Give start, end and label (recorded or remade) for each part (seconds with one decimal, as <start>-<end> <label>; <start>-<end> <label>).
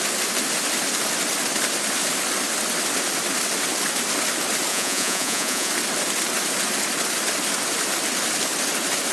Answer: 0.0-4.7 recorded; 4.7-5.7 remade; 5.7-9.1 recorded